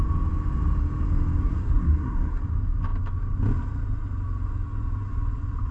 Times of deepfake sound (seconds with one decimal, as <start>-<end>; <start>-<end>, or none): 1.4-2.4